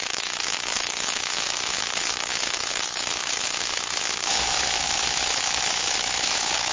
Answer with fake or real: fake